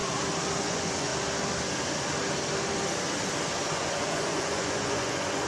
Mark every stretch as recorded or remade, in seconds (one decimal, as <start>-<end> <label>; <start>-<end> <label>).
0.0-0.6 recorded; 0.6-1.1 remade; 1.1-3.7 recorded; 3.7-5.5 remade